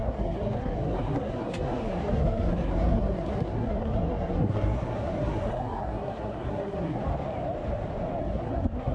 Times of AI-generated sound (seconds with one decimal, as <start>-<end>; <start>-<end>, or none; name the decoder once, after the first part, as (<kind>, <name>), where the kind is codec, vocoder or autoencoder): 0.0-7.0 (codec, SNAC); 8.2-8.9